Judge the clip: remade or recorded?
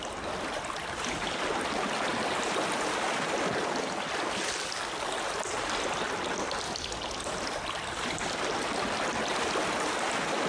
recorded